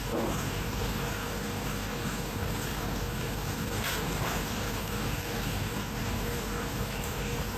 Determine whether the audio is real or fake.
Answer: fake